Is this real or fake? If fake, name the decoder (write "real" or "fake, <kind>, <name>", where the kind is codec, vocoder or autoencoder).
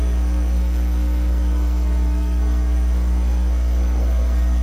fake, codec, SNAC